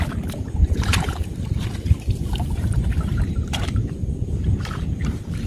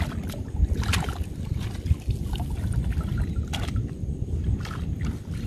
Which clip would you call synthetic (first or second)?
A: first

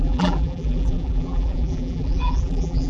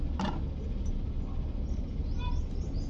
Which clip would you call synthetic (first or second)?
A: first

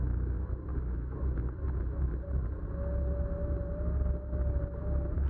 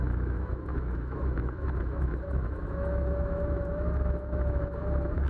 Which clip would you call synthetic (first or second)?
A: second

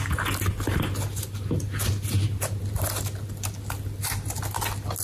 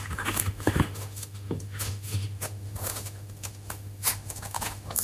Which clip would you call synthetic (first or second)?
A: second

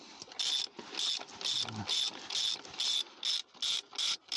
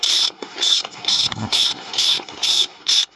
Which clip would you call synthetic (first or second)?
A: second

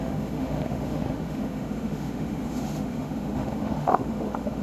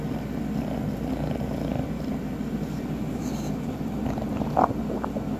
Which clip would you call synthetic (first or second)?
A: first